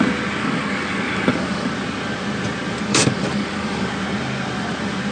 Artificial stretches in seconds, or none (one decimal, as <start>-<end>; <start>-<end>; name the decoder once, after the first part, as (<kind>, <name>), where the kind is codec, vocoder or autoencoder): 0.4-1.7 (codec, DAC); 2.9-3.9